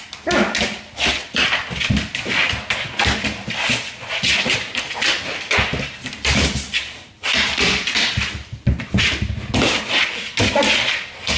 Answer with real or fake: real